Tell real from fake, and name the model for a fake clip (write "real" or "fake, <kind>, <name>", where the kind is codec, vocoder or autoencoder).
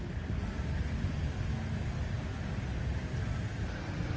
real